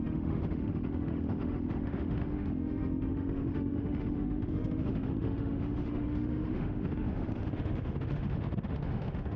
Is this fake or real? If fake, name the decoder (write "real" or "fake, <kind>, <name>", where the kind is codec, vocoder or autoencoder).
fake, autoencoder, DAC-VAE